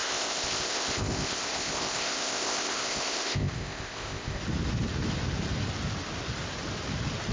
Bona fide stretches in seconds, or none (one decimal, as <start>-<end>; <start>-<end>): 4.4-7.3